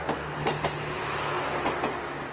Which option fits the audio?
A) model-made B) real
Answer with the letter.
B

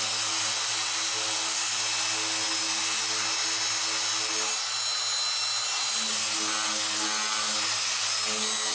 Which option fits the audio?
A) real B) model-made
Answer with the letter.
A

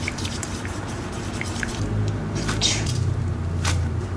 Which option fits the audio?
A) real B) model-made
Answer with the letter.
B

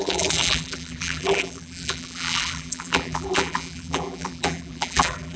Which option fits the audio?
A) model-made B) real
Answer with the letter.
A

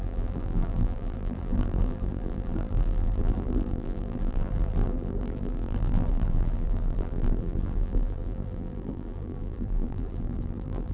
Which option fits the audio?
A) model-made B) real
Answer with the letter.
A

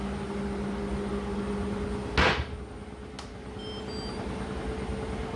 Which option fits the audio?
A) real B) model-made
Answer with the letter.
A